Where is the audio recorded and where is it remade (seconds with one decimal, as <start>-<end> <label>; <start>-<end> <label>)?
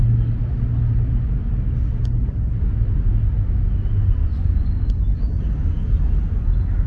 0.0-4.2 recorded; 4.2-4.9 remade; 4.9-6.9 recorded